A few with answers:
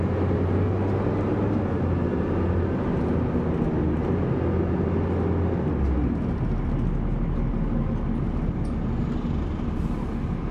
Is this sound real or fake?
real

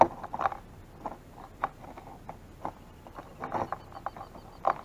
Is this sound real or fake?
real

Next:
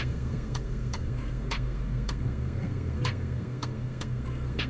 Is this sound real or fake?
fake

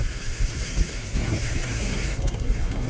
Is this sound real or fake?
fake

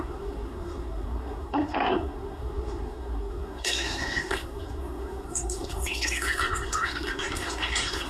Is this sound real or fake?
fake